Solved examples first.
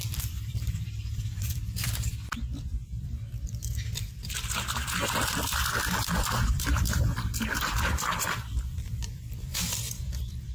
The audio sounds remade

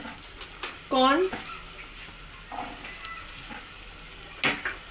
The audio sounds recorded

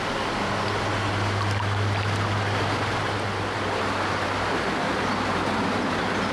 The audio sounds recorded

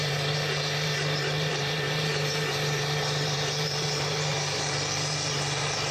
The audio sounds remade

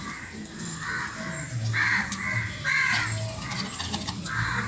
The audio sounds recorded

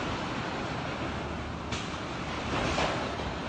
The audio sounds remade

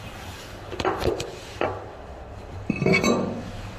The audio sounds remade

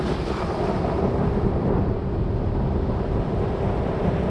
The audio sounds remade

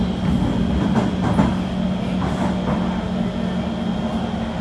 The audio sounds recorded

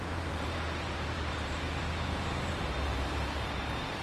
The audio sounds remade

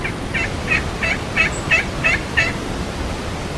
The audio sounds recorded